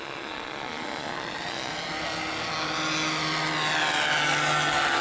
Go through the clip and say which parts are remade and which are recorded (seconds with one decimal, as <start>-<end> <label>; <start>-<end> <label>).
0.0-1.7 remade; 1.7-5.0 recorded